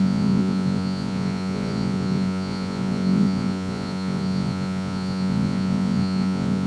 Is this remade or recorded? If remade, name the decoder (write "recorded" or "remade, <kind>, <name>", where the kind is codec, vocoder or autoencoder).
remade, vocoder, Vocos